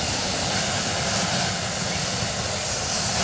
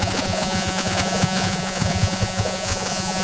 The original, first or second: first